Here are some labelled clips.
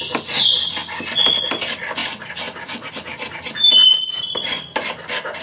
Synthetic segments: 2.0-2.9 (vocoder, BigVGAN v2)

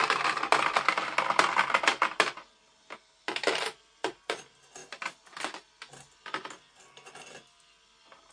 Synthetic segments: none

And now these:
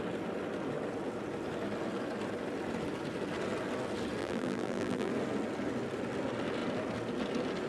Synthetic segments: 4.2-5.1 (vocoder, BigVGAN v2)

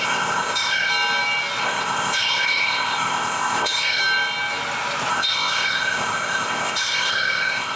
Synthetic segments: 0.0-0.9 (codec, ZipCodec); 1.6-4.0; 5.1-7.8